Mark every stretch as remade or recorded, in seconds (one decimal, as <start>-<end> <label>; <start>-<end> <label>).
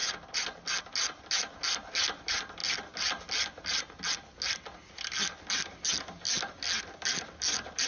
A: 0.0-7.9 recorded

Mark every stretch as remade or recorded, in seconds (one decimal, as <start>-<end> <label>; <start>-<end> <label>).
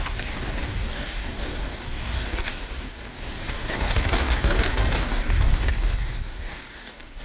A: 0.0-7.2 remade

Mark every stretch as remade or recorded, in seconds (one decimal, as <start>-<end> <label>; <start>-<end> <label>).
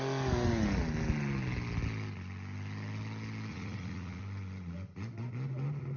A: 0.0-3.5 recorded; 3.5-4.2 remade; 4.2-6.0 recorded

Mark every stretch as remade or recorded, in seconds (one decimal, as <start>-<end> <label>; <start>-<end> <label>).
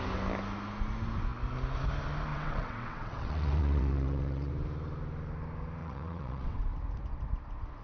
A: 0.0-2.3 recorded; 2.3-4.5 remade; 4.5-5.8 recorded; 5.8-6.6 remade; 6.6-7.8 recorded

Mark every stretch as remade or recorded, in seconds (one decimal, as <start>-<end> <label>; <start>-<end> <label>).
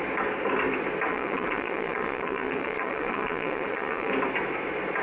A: 0.0-1.1 recorded; 1.1-4.1 remade; 4.1-5.0 recorded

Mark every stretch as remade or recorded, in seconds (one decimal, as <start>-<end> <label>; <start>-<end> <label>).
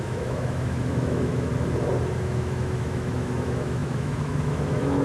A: 0.0-1.5 remade; 1.5-2.2 recorded; 2.2-5.0 remade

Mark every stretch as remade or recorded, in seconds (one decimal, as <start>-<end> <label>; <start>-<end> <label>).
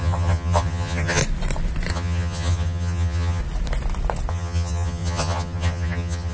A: 0.0-1.2 remade; 1.2-1.9 recorded; 1.9-3.4 remade; 3.4-4.3 recorded; 4.3-6.3 remade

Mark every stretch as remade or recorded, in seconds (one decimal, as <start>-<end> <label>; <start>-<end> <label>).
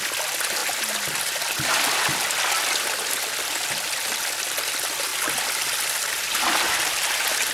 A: 0.0-7.5 recorded